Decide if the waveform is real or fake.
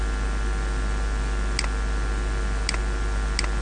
real